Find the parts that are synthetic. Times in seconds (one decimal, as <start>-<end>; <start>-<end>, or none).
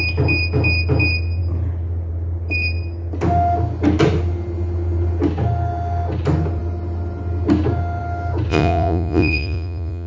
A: 8.5-10.1